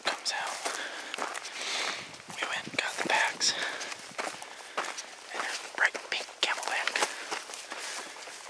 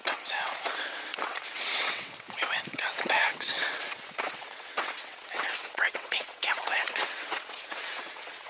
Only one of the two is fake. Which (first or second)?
second